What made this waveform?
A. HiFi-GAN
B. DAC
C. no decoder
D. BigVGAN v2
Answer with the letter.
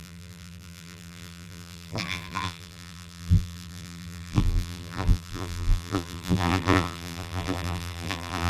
D